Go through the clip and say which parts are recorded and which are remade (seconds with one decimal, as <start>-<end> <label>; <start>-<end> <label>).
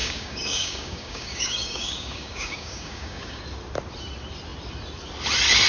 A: 0.0-3.4 remade; 3.4-5.7 recorded